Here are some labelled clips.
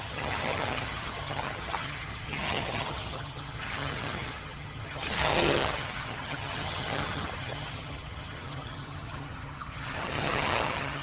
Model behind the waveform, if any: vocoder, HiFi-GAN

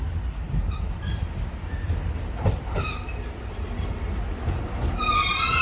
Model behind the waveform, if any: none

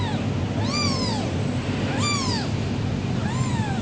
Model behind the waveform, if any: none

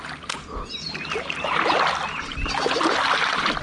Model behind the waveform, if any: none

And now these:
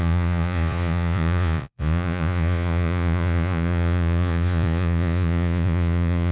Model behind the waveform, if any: vocoder, Vocos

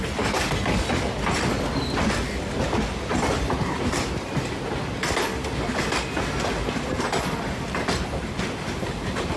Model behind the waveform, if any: none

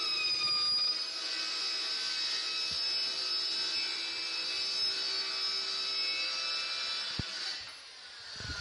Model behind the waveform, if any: none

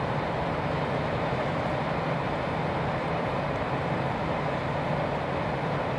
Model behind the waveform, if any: vocoder, BigVGAN v2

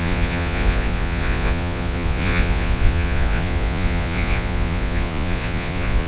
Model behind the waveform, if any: vocoder, Vocos